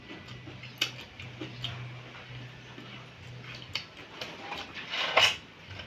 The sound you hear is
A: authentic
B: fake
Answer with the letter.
A